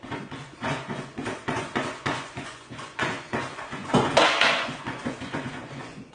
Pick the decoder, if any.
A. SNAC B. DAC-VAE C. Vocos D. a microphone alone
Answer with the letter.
C